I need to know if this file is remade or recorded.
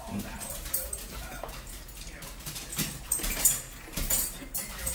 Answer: remade